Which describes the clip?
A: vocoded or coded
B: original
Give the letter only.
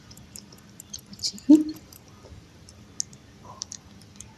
B